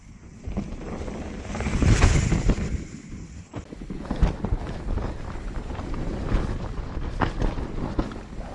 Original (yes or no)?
yes